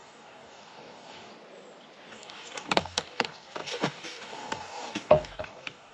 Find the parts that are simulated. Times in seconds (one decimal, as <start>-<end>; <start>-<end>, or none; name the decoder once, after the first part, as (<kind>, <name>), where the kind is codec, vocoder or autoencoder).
0.0-1.3 (codec, DAC); 2.1-5.9